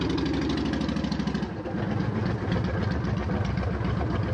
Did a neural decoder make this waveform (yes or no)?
no